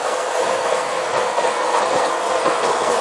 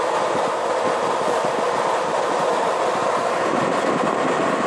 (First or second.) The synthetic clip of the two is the first